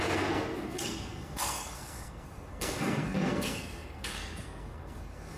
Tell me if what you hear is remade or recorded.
remade